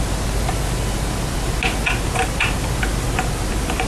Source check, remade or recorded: recorded